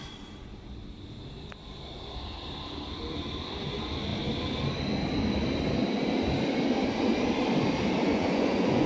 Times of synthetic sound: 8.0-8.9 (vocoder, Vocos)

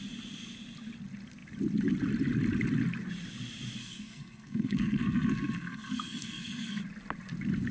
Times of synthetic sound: 3.8-6.8 (codec, SNAC)

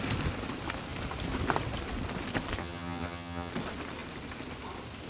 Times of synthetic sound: 2.6-3.5 (vocoder, HiFi-GAN)

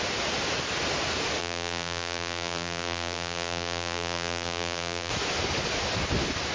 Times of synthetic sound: 1.4-5.1 (vocoder, BigVGAN v2)